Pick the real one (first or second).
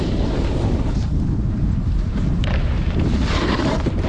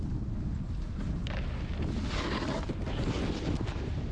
second